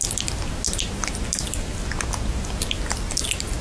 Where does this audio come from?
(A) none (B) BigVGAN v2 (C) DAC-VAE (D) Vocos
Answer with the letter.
A